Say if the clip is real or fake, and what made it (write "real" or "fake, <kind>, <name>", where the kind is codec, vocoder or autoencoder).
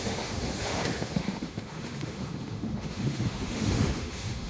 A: fake, autoencoder, DAC-VAE